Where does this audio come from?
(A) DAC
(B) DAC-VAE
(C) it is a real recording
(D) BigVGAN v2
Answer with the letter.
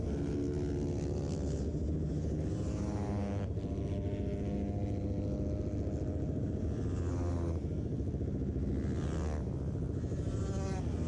C